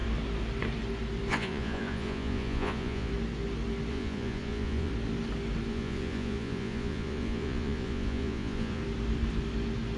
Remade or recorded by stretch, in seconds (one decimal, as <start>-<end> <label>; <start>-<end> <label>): 0.0-1.3 recorded; 1.3-3.1 remade; 3.1-3.9 recorded; 3.9-4.9 remade; 4.9-5.7 recorded; 5.7-8.8 remade; 8.8-10.0 recorded